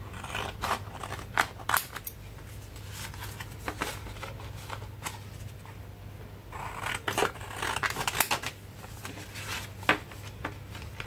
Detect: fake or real real